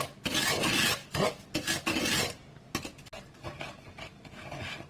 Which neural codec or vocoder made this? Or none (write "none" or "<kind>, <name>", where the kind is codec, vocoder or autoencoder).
none